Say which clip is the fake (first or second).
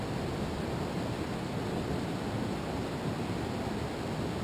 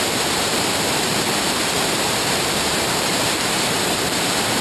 second